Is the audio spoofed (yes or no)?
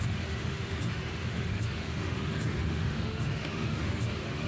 yes